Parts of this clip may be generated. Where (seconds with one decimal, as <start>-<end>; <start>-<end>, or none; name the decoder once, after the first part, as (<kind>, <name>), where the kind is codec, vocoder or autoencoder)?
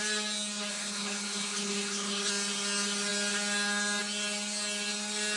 0.7-2.3 (codec, HILCodec)